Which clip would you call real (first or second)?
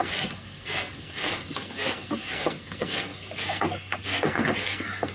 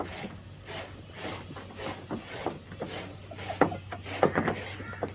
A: second